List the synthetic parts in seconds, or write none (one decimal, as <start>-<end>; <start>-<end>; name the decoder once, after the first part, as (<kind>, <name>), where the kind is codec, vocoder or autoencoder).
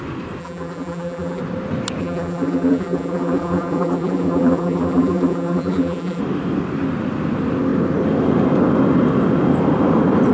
0.4-1.4 (vocoder, BigVGAN v2); 2.0-6.2